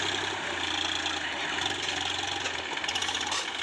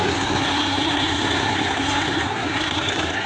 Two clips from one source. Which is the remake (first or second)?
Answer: second